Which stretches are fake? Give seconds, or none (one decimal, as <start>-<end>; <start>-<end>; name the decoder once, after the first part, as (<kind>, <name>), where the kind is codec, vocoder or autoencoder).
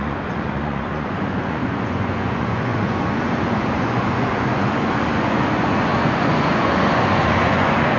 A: 0.0-8.0 (vocoder, Vocos)